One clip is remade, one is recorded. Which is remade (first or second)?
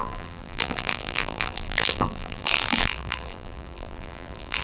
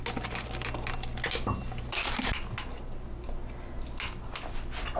first